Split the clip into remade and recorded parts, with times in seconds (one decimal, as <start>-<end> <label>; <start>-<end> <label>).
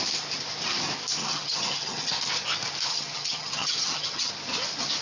0.0-1.2 recorded; 1.2-2.1 remade; 2.1-2.9 recorded; 2.9-4.3 remade; 4.3-5.0 recorded